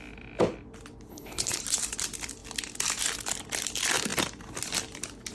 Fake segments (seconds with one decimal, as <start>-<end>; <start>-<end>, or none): 1.1-1.6